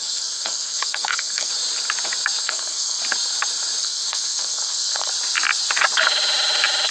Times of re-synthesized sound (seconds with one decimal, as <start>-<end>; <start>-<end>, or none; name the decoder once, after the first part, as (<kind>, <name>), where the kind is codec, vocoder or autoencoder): 0.0-1.5 (codec, SNAC); 2.4-3.0; 3.8-5.1